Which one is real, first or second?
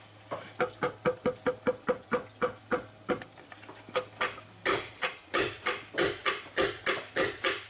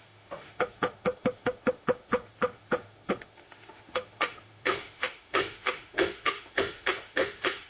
first